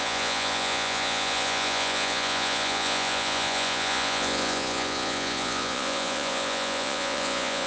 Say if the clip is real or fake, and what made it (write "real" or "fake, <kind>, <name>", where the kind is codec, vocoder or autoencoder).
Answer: fake, vocoder, Vocos